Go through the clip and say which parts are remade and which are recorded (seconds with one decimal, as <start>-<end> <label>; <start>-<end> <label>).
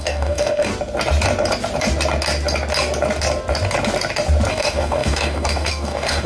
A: 0.0-0.7 remade; 0.7-4.5 recorded; 4.5-6.3 remade